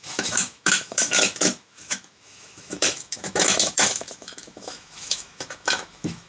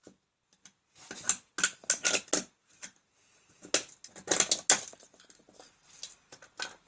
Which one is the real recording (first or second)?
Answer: second